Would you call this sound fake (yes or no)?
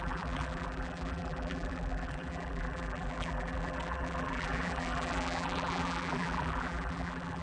yes